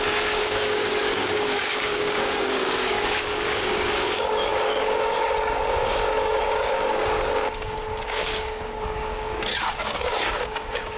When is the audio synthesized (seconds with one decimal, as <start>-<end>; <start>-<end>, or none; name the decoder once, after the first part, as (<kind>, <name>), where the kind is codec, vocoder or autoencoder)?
0.0-9.5 (codec, DAC); 10.0-11.0